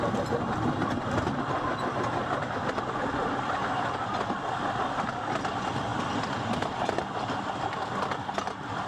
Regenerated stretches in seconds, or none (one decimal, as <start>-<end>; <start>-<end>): none